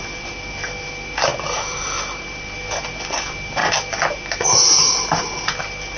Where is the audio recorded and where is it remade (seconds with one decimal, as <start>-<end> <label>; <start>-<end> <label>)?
0.0-6.0 recorded